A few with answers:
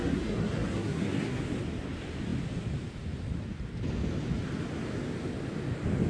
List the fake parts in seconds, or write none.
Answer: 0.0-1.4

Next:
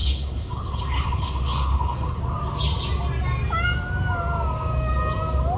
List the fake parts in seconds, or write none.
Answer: 0.0-2.2